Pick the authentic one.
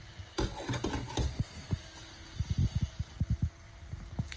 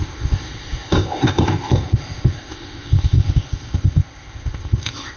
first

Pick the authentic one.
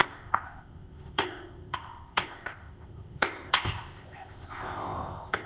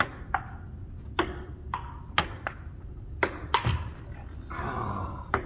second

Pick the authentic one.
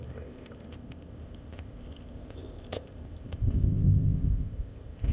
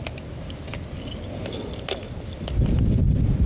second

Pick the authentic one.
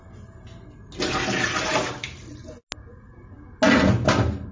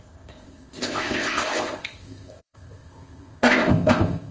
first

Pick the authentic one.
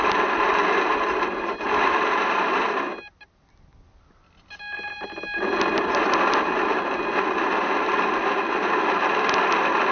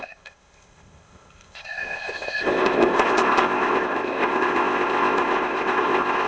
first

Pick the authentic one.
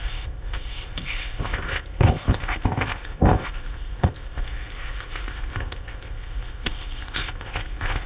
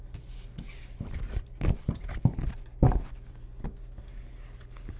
second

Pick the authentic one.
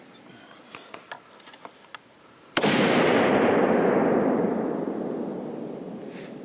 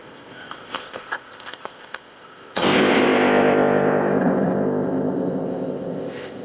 first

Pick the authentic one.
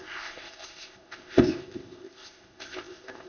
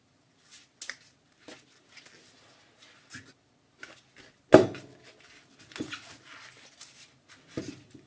second